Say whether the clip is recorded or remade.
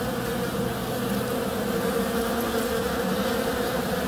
recorded